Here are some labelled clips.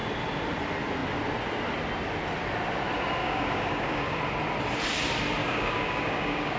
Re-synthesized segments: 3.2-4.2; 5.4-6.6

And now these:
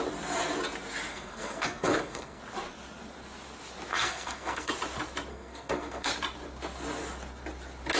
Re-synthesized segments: 1.1-2.4; 3.9-4.7; 5.3-6.1

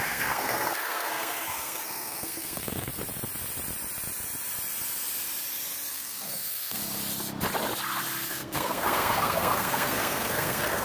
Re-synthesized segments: 0.0-2.9; 5.9-6.8; 8.3-10.8

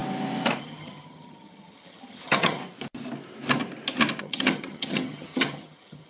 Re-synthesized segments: 0.6-2.6; 4.2-6.1

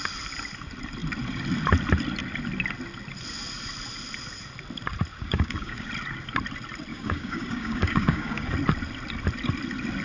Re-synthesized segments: 5.1-5.9; 6.9-8.5

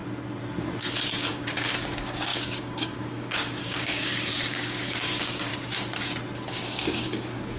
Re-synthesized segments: 1.3-5.5; 6.5-7.6